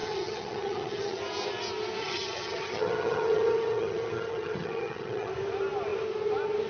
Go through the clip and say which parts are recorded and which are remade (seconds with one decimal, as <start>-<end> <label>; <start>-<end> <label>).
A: 0.0-1.2 remade; 1.2-2.0 recorded; 2.0-5.3 remade; 5.3-6.7 recorded